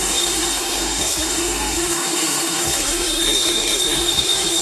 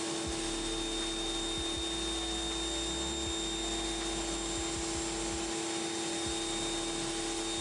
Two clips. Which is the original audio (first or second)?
second